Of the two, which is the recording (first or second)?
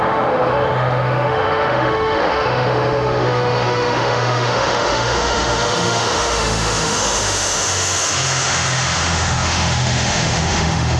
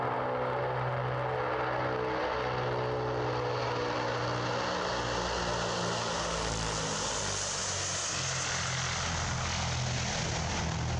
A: second